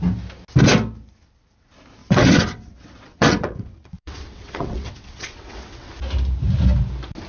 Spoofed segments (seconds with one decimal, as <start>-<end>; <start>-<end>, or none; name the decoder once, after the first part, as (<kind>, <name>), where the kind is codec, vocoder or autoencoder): 2.0-5.9 (vocoder, WaveNeXt)